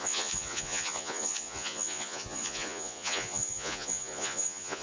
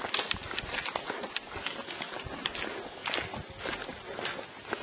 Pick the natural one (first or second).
second